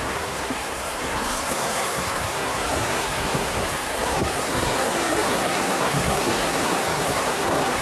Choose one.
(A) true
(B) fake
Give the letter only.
B